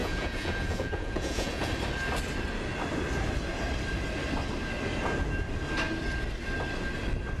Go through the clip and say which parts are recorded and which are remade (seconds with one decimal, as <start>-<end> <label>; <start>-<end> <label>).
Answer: 0.0-1.7 remade; 1.7-7.4 recorded